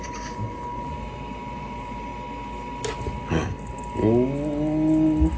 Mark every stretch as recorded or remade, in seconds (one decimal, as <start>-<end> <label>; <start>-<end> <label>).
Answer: 0.0-2.1 remade; 2.1-5.4 recorded